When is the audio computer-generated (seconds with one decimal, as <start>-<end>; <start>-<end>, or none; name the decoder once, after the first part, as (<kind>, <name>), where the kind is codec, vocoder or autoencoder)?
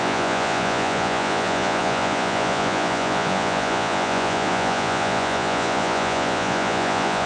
0.0-7.3 (vocoder, Vocos)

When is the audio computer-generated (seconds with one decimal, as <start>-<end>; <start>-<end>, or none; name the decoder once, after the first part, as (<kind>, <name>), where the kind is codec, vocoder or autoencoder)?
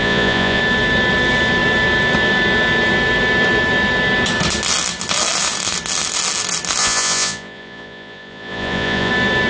0.0-0.6 (vocoder, Vocos); 6.8-9.1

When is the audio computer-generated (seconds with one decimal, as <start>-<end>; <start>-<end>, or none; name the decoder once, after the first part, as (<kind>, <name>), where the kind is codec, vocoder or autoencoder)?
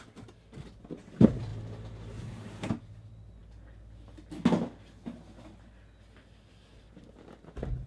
none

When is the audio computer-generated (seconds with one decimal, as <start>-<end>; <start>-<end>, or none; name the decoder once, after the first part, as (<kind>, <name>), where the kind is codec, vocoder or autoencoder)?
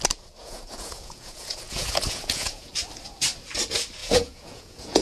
0.4-2.7 (vocoder, Vocos); 4.0-5.0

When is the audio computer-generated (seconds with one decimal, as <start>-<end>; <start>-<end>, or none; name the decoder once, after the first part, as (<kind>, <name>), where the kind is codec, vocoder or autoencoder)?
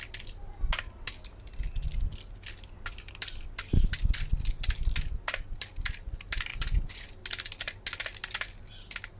6.5-7.1 (vocoder, Vocos)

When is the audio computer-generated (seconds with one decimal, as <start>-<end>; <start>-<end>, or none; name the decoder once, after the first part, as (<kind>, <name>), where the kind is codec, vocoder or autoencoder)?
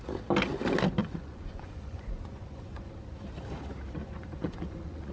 1.0-2.9 (vocoder, Vocos); 4.0-5.1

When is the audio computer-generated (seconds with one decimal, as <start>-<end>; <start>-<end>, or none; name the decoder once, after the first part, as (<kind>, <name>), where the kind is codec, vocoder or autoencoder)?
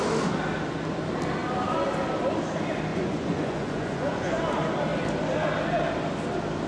2.9-4.4 (vocoder, Vocos)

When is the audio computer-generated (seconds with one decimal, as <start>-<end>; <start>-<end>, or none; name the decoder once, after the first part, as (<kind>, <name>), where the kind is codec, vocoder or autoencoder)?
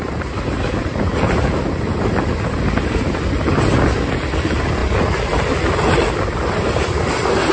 none